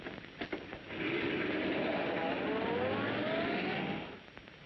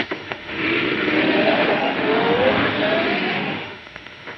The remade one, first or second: second